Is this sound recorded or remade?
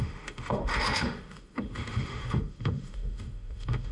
remade